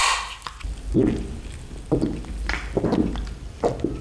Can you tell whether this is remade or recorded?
recorded